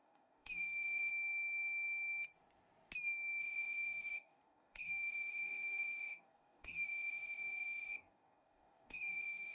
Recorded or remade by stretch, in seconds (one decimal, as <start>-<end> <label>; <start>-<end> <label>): 0.0-1.1 remade; 1.1-3.4 recorded; 3.4-9.5 remade